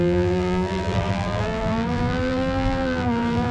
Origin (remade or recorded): remade